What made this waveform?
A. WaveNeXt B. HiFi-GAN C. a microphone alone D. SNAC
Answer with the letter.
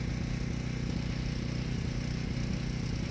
C